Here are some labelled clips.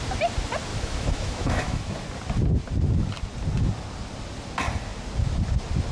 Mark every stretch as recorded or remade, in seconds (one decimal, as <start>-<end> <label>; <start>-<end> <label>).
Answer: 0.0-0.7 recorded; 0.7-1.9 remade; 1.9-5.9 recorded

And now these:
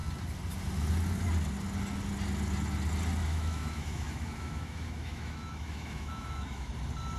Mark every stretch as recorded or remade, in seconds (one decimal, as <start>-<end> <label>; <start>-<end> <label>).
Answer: 0.0-3.3 recorded; 3.3-6.7 remade; 6.7-7.2 recorded

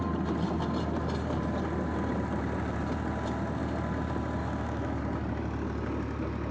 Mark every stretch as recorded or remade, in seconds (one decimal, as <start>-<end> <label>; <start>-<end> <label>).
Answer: 0.0-4.4 recorded; 4.4-5.0 remade; 5.0-6.5 recorded

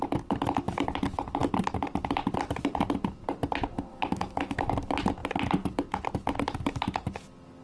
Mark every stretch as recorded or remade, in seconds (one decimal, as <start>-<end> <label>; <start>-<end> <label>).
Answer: 0.0-3.9 recorded; 3.9-4.7 remade; 4.7-7.6 recorded

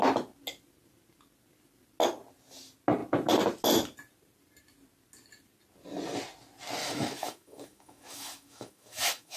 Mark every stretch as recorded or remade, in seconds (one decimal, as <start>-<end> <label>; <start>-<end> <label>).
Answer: 0.0-6.8 recorded; 6.8-9.4 remade